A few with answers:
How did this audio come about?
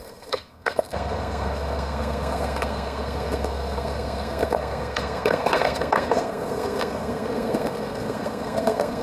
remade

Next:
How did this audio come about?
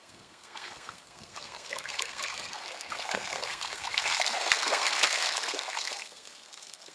remade